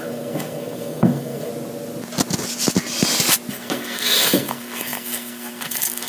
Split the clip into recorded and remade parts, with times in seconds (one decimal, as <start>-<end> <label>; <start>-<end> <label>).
0.0-1.5 remade; 1.5-3.5 recorded; 3.5-6.1 remade